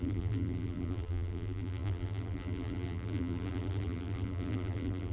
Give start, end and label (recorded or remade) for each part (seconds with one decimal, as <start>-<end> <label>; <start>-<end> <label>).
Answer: 0.0-5.1 remade